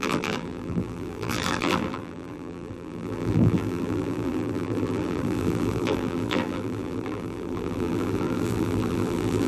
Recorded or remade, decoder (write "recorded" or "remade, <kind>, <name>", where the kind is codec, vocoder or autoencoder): remade, vocoder, BigVGAN v2